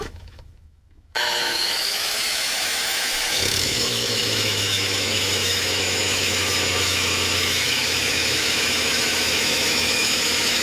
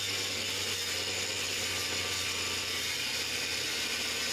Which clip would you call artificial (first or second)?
first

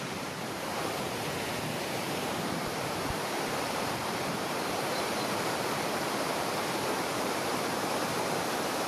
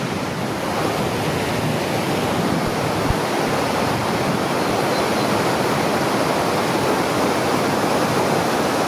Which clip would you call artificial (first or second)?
first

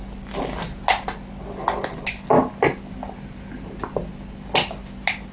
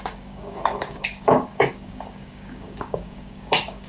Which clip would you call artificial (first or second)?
second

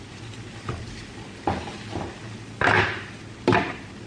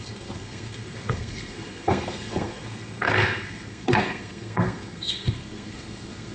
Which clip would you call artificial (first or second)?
second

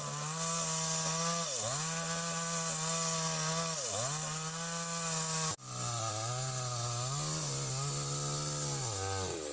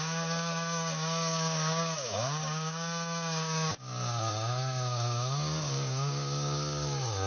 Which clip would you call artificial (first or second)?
second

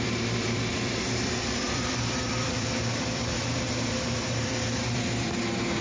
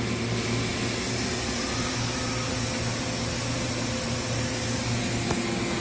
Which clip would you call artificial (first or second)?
first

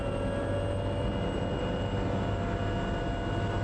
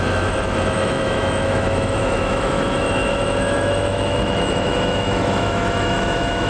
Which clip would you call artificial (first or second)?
second